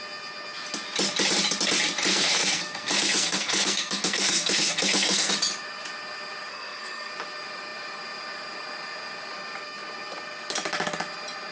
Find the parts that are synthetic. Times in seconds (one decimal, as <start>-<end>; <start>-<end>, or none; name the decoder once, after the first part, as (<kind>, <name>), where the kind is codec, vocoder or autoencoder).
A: 2.1-5.3 (codec, SNAC); 6.5-7.1